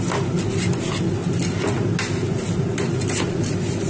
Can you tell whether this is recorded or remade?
recorded